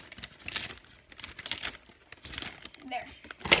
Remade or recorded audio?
recorded